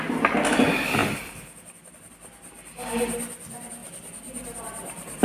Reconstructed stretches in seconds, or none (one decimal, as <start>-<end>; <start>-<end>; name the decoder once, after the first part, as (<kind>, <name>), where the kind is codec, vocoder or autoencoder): none